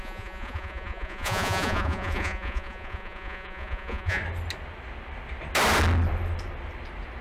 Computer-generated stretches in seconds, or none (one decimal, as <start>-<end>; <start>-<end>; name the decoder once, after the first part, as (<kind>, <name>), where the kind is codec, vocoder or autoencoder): 0.0-4.2 (vocoder, Vocos)